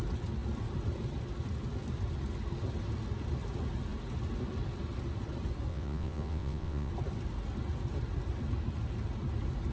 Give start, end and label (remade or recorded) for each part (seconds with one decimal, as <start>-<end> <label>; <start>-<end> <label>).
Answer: 0.0-5.7 recorded; 5.7-6.9 remade; 6.9-9.7 recorded